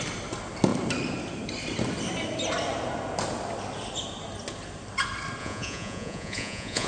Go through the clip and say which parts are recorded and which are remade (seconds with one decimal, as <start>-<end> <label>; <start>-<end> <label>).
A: 0.0-5.4 recorded; 5.4-6.9 remade